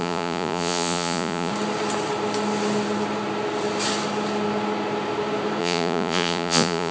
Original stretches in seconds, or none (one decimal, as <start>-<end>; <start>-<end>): 1.5-5.6